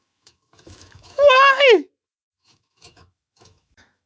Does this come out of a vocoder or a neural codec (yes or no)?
yes